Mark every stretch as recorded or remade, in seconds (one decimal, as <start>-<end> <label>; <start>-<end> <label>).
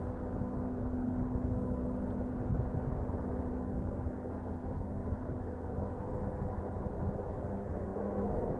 0.0-1.8 remade; 1.8-3.6 recorded; 3.6-6.1 remade; 6.1-7.3 recorded; 7.3-8.6 remade